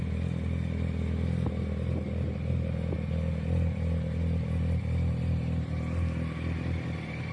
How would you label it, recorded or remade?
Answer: recorded